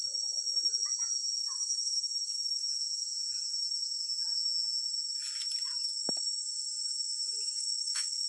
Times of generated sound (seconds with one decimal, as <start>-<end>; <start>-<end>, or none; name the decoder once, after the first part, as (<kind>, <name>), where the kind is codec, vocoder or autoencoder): 1.4-2.6 (autoencoder, DAC-VAE); 7.6-8.3